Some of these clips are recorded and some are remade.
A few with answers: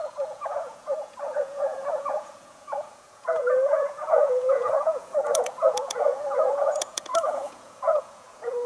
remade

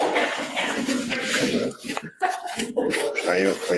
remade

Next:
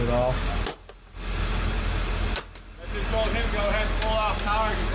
recorded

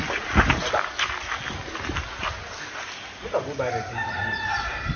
recorded